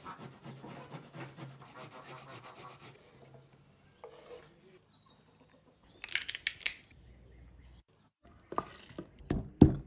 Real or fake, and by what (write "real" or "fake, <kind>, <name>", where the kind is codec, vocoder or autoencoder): real